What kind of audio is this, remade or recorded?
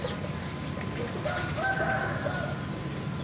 recorded